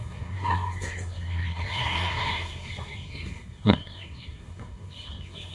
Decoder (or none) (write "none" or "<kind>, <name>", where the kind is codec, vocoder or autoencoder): codec, SNAC